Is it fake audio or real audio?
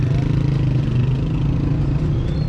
real